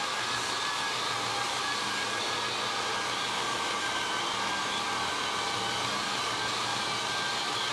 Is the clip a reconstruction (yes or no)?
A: no